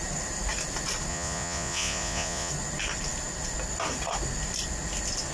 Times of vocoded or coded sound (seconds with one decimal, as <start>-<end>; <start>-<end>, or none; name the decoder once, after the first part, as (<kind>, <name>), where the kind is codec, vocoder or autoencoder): 1.1-2.5 (vocoder, Vocos)